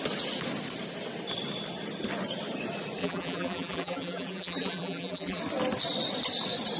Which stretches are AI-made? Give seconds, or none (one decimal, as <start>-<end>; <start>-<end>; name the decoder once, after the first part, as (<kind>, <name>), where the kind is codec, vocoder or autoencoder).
3.0-5.4 (vocoder, BigVGAN v2)